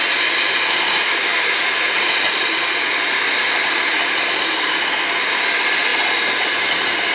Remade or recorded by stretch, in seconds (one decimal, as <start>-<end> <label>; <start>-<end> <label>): 0.0-7.1 recorded